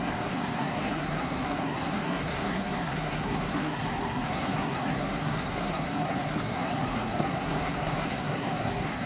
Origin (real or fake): fake